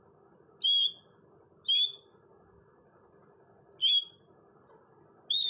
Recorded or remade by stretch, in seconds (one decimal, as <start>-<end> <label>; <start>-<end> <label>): 0.0-5.5 recorded